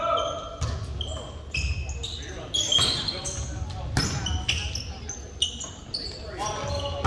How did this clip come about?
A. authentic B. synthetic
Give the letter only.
A